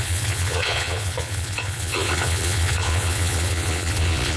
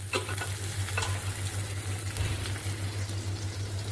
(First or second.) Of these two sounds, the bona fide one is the second